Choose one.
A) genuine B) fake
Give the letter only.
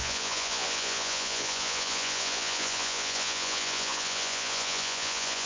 B